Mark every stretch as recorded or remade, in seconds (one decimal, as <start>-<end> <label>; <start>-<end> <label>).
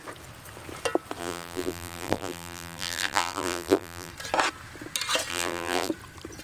0.0-1.2 recorded; 1.2-4.1 remade; 4.1-5.3 recorded; 5.3-5.9 remade; 5.9-6.4 recorded